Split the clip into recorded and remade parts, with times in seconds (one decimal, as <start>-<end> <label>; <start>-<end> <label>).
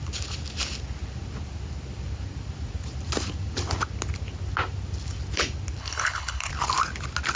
0.0-5.8 recorded; 5.8-6.5 remade; 6.5-7.4 recorded